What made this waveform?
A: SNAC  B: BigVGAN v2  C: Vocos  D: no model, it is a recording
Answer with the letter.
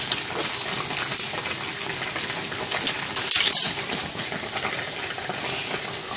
D